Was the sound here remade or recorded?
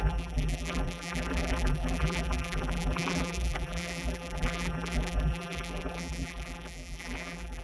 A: remade